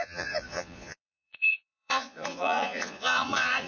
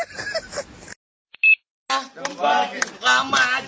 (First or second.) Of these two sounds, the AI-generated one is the first